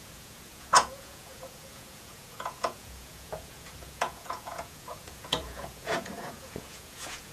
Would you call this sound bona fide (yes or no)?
no